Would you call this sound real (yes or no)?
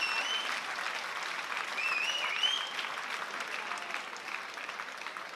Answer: yes